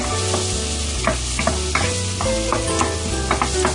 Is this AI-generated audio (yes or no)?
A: no